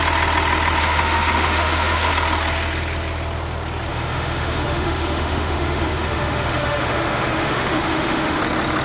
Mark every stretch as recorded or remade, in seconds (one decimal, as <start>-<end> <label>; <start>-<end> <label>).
0.0-0.8 recorded; 0.8-2.1 remade; 2.1-3.9 recorded; 3.9-8.4 remade; 8.4-8.8 recorded